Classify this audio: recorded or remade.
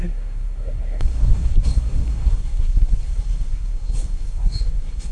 remade